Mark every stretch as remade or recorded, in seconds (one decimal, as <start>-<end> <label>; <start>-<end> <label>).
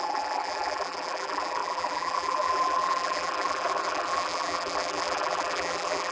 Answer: 0.0-6.1 remade